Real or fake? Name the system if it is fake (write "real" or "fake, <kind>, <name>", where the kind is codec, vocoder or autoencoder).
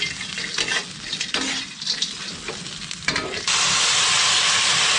real